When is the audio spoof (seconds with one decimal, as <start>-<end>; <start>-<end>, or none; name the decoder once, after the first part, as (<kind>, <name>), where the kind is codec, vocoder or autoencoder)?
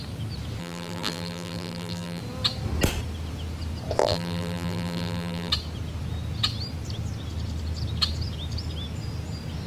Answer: 0.6-2.2 (vocoder, BigVGAN v2); 4.0-5.5